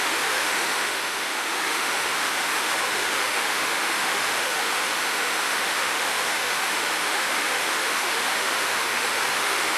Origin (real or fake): fake